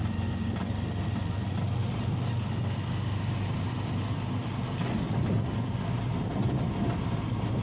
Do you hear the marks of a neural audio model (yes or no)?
no